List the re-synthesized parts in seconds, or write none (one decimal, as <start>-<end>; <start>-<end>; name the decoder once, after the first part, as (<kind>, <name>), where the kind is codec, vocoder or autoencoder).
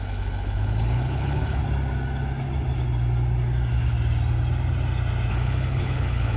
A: 0.0-1.6 (codec, HILCodec); 5.3-6.4